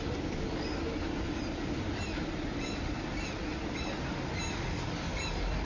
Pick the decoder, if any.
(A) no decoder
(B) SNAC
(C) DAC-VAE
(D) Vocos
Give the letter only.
A